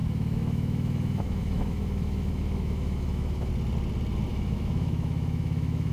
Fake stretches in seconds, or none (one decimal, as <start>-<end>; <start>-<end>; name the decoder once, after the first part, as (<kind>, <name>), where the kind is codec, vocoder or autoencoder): 0.0-3.5 (autoencoder, DAC-VAE); 4.3-5.9